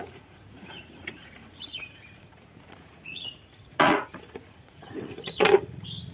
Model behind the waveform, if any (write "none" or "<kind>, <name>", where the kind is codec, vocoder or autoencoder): vocoder, Vocos